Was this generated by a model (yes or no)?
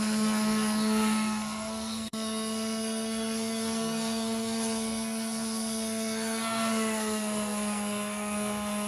yes